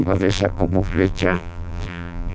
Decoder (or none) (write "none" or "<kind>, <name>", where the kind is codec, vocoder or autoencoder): vocoder, BigVGAN v2